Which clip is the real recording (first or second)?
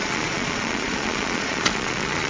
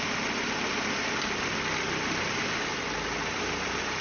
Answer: second